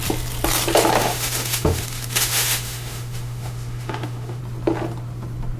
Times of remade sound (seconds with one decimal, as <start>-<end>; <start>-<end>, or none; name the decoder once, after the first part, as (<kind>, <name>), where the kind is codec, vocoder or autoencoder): 1.0-4.4 (autoencoder, DAC-VAE)